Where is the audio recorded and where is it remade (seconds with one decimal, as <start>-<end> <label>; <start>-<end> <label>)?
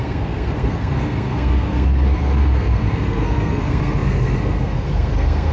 0.0-5.5 remade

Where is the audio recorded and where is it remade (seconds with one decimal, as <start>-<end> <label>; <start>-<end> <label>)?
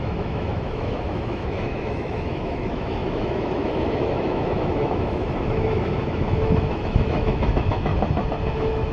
0.0-7.9 remade; 7.9-8.5 recorded; 8.5-8.9 remade